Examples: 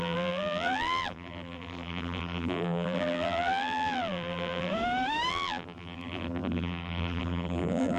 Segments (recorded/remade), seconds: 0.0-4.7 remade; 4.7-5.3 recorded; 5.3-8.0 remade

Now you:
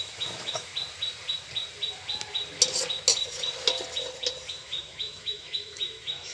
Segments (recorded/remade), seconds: 0.0-0.7 remade; 0.7-4.5 recorded; 4.5-6.3 remade

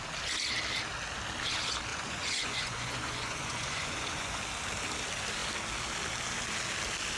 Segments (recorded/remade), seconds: 0.0-1.9 recorded; 1.9-4.4 remade; 4.4-7.2 recorded